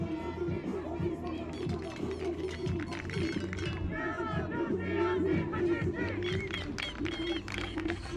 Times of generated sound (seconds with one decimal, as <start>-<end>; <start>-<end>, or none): 7.5-8.2